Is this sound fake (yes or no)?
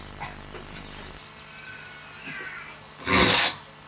no